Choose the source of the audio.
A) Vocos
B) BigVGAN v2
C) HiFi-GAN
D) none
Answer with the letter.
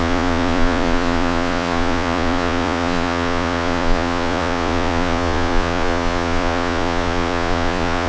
A